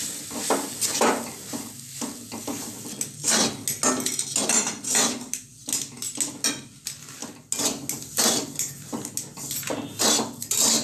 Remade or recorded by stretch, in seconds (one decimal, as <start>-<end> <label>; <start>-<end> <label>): 0.0-10.8 recorded